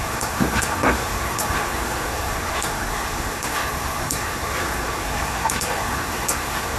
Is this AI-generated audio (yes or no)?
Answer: yes